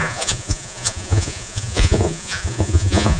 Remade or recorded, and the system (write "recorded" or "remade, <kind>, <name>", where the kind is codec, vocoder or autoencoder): remade, vocoder, Vocos